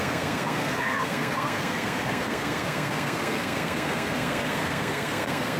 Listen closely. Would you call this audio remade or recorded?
remade